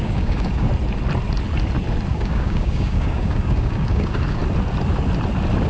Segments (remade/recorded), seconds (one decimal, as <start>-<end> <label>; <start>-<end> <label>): 0.0-0.7 remade; 0.7-2.1 recorded; 2.1-4.4 remade; 4.4-5.7 recorded